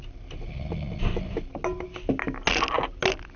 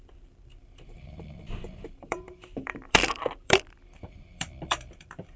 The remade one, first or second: second